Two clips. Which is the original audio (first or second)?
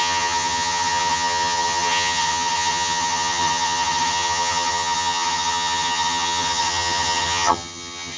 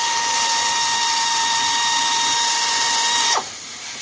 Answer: second